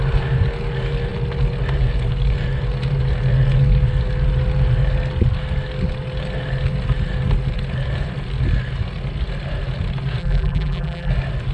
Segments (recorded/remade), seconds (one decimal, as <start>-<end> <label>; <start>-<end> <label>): 0.0-10.2 recorded; 10.2-11.1 remade; 11.1-11.5 recorded